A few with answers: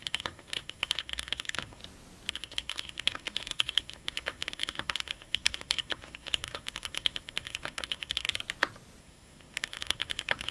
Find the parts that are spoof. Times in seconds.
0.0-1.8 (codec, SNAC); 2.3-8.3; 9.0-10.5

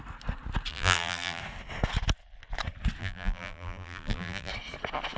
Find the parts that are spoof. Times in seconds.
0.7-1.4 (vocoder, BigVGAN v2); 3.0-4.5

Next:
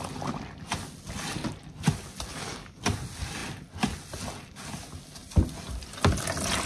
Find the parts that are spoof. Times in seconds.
2.3-2.8 (codec, DAC)

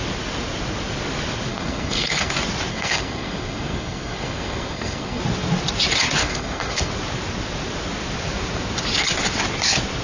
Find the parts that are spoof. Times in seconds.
1.5-2.3 (codec, SNAC); 2.7-5.2; 6.2-6.9

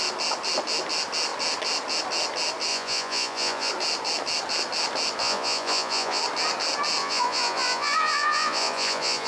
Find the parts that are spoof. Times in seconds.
2.7-3.7 (vocoder, Vocos); 5.2-6.2; 7.0-9.3